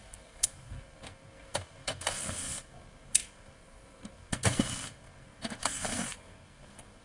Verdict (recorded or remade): remade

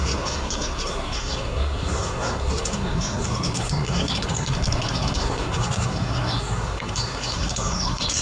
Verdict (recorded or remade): remade